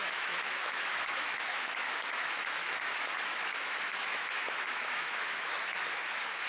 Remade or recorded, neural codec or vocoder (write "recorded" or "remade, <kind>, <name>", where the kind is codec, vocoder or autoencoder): remade, autoencoder, DAC-VAE